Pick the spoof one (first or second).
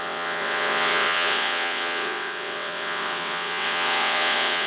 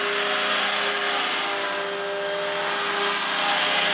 first